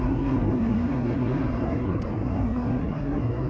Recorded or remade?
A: remade